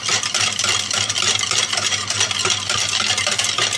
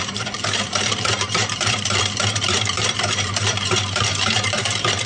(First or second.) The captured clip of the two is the first